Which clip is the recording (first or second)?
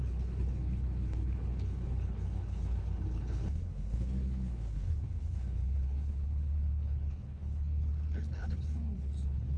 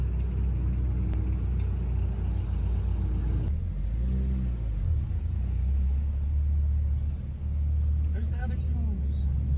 second